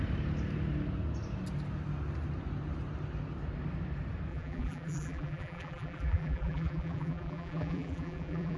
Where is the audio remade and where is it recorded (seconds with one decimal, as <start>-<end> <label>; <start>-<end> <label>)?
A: 0.0-4.3 recorded; 4.3-8.6 remade